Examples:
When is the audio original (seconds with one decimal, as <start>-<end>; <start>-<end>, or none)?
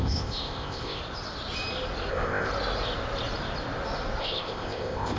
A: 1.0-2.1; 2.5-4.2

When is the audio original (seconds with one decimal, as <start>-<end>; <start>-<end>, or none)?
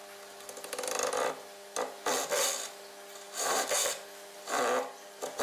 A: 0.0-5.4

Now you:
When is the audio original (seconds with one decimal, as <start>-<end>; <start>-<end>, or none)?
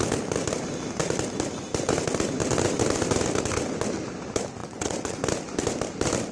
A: 0.0-4.6; 5.2-6.3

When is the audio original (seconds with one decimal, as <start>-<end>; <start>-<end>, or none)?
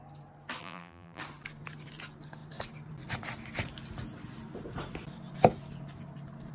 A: 0.0-0.6; 1.2-6.5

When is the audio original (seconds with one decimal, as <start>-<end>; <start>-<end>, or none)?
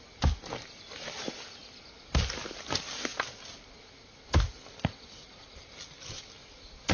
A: 0.0-6.9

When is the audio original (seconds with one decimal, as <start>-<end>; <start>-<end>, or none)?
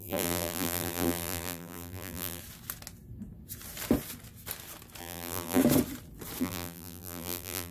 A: 2.4-5.0; 5.6-6.4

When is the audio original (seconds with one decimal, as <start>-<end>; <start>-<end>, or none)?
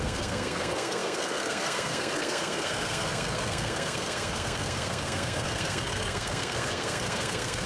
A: none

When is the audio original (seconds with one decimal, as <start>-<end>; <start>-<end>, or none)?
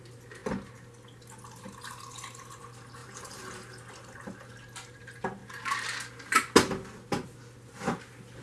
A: 0.0-3.0; 3.7-8.4